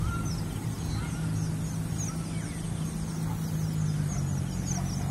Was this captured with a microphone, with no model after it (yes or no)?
yes